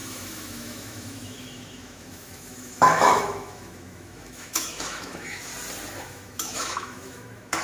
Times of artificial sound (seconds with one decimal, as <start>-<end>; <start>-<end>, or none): 0.0-5.5; 6.0-7.6